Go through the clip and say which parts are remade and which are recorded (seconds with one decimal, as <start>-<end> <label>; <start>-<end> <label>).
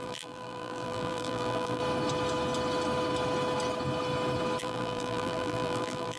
0.0-1.8 remade; 1.8-4.6 recorded; 4.6-6.2 remade